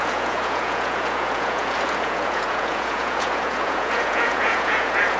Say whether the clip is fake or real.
fake